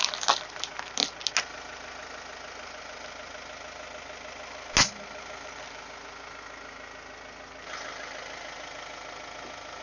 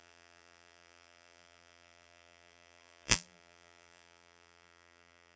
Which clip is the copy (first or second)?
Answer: second